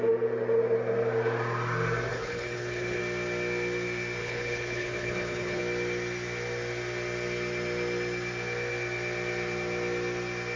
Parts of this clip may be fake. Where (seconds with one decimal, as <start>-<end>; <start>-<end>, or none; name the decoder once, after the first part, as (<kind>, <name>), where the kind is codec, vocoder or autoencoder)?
2.1-3.0 (codec, HILCodec); 4.2-5.6